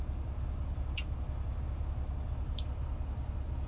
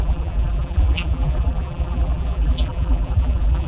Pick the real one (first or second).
first